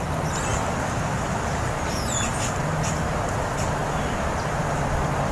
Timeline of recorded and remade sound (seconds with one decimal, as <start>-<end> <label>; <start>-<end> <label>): 0.0-5.3 recorded